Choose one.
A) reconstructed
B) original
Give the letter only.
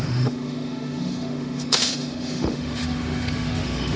A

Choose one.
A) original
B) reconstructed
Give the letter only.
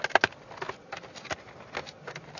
A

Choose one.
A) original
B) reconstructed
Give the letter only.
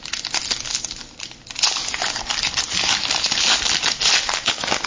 A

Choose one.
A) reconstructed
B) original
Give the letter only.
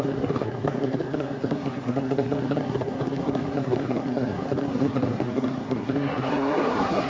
A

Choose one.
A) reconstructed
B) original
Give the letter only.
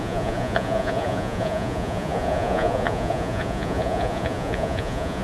A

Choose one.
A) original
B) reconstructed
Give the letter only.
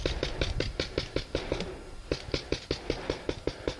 A